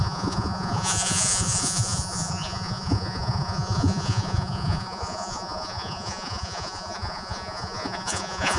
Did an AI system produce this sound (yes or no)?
yes